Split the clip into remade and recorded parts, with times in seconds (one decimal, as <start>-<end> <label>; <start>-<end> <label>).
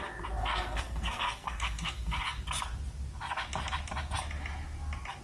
0.0-0.4 recorded; 0.4-2.2 remade; 2.2-5.2 recorded